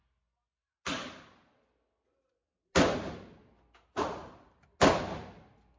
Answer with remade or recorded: recorded